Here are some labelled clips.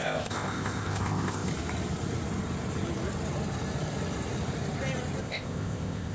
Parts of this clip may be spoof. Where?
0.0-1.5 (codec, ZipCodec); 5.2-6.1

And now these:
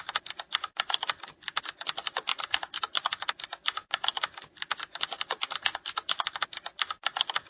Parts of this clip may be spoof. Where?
none

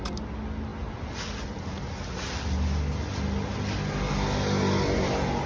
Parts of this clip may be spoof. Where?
none

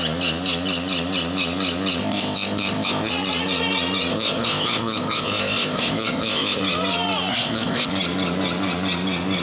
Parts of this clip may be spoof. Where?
2.0-3.1 (codec, ZipCodec); 4.1-6.6; 7.3-7.9

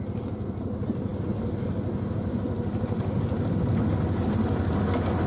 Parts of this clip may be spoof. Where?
none

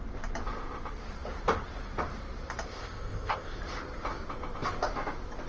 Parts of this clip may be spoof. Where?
2.7-3.6 (codec, ZipCodec)

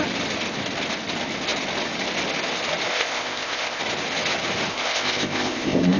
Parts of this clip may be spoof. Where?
2.9-3.8 (codec, ZipCodec); 4.7-6.0

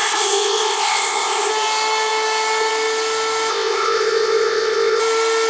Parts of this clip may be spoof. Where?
0.0-1.5 (codec, ZipCodec); 3.5-5.0